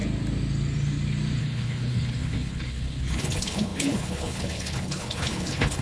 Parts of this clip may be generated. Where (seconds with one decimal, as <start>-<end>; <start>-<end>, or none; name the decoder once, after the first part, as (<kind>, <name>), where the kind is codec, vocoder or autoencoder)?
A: 1.4-5.8 (codec, HILCodec)